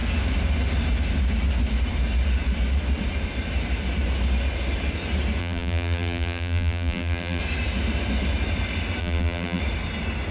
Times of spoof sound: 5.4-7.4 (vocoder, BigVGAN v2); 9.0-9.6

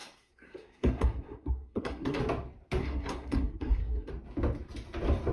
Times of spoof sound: 0.0-2.2 (codec, SNAC); 2.8-4.1

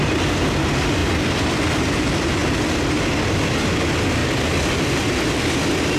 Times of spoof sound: none

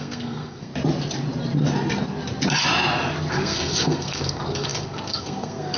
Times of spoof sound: 0.0-0.7 (codec, SNAC); 3.3-5.8

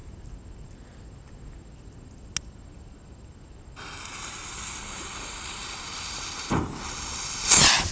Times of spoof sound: none

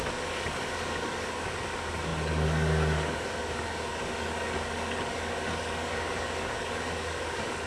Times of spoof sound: 0.0-7.7 (codec, DAC)